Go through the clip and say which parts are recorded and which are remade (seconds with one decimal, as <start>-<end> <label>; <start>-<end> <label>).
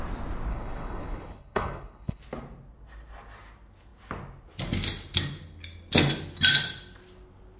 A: 0.0-0.5 recorded; 0.5-2.2 remade; 2.2-7.6 recorded